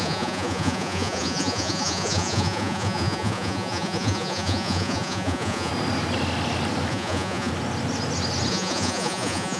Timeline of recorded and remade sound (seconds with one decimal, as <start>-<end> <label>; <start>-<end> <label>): 0.0-5.7 remade; 5.7-6.9 recorded; 6.9-7.5 remade; 7.5-8.5 recorded; 8.5-9.6 remade